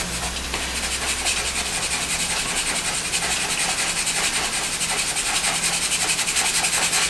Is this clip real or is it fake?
real